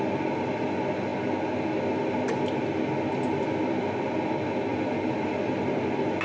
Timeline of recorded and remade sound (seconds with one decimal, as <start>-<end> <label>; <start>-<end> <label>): 0.0-6.2 recorded